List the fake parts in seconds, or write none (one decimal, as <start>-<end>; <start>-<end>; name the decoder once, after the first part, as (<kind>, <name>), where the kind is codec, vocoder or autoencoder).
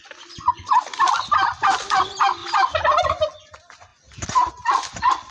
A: none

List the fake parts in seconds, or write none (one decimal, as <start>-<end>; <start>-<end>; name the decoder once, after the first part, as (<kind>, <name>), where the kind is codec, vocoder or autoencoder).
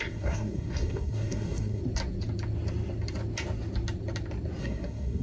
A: 0.0-1.8 (codec, SNAC); 4.6-5.2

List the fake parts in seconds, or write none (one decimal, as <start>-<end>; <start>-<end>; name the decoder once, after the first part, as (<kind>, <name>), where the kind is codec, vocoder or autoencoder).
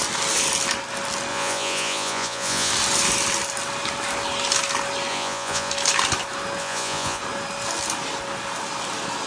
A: 1.3-2.7 (vocoder, Vocos); 5.1-5.7; 6.6-7.2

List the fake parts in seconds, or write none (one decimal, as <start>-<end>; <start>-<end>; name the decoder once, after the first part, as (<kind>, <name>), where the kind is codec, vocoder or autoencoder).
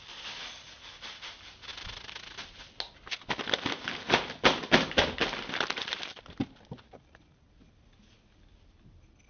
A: none